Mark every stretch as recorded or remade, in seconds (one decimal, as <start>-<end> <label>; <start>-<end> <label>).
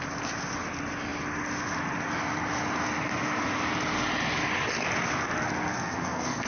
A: 0.0-5.7 recorded; 5.7-6.5 remade